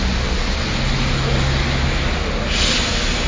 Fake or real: real